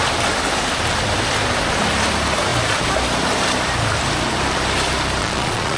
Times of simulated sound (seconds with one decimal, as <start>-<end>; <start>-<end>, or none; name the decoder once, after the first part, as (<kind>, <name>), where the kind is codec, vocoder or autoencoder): 5.2-5.8 (vocoder, Vocos)